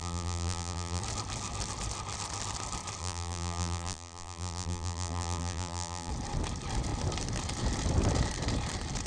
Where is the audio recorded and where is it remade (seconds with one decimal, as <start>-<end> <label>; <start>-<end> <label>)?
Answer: 0.0-1.0 remade; 1.0-3.0 recorded; 3.0-6.1 remade; 6.1-9.1 recorded

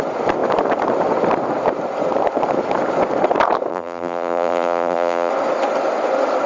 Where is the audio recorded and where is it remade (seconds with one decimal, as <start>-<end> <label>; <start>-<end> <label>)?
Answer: 0.0-3.7 recorded; 3.7-5.3 remade; 5.3-6.5 recorded